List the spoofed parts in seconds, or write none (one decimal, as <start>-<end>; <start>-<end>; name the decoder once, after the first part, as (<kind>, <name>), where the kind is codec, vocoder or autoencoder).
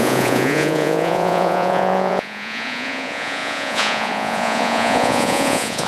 0.0-5.9 (vocoder, Vocos)